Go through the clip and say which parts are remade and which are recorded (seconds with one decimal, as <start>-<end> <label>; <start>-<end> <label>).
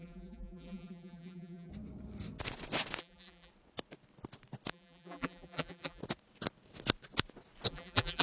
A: 0.0-1.7 remade; 1.7-3.0 recorded; 3.0-3.5 remade; 3.5-4.7 recorded; 4.7-6.0 remade; 6.0-7.7 recorded; 7.7-8.2 remade